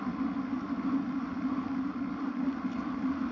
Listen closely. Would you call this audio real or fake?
real